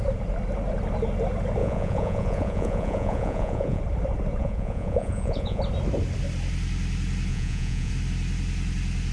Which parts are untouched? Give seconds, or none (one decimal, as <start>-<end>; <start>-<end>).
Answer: 0.0-1.6; 3.8-4.4; 5.6-7.3; 7.9-9.1